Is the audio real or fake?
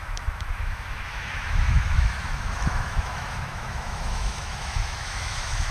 fake